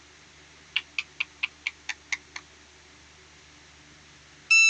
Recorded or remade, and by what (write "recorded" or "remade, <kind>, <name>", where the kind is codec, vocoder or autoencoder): recorded